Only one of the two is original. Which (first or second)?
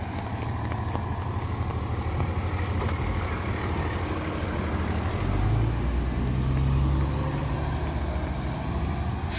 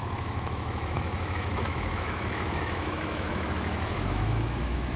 first